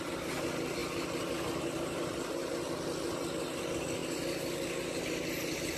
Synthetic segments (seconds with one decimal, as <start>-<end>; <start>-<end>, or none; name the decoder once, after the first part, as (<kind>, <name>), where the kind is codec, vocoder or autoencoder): none